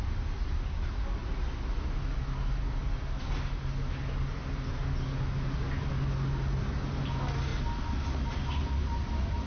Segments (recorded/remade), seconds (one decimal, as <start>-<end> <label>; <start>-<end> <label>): 0.0-9.5 recorded